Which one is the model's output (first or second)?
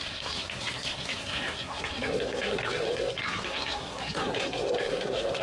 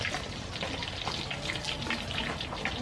first